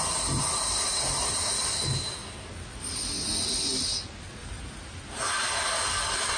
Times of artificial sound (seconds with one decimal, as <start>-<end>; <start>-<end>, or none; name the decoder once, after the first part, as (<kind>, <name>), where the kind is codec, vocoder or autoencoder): 0.9-1.5 (vocoder, BigVGAN v2); 4.4-5.4